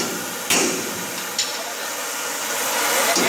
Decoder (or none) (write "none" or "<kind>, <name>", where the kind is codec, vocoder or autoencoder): none